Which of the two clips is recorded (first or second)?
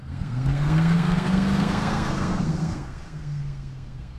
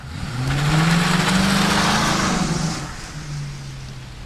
second